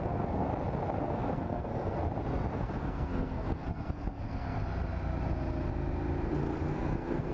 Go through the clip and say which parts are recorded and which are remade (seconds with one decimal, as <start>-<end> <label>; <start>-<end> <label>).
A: 0.0-0.5 remade; 0.5-1.0 recorded; 1.0-2.0 remade; 2.0-2.5 recorded; 2.5-4.6 remade; 4.6-6.6 recorded; 6.6-7.3 remade